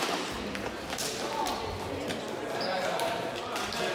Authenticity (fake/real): real